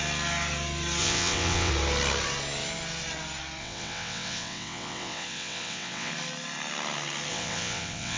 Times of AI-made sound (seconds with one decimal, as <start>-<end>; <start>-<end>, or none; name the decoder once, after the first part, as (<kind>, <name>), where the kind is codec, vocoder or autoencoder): 1.0-1.7 (vocoder, WaveNeXt); 3.6-6.1; 7.3-8.2